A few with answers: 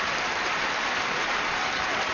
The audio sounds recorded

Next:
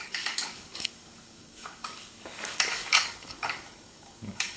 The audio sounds remade